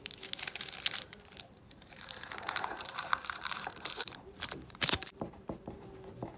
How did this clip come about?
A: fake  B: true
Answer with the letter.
A